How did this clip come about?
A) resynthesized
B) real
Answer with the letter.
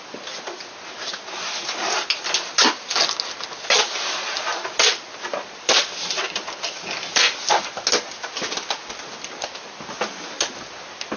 B